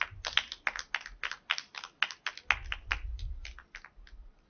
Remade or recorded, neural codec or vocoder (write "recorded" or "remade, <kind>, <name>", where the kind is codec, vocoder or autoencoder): recorded